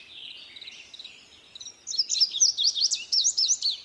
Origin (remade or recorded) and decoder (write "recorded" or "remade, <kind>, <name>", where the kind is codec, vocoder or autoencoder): recorded